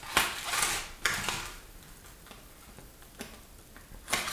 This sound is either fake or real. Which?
real